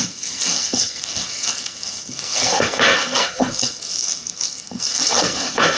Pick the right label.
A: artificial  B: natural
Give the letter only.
A